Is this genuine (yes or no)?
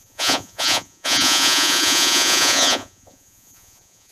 no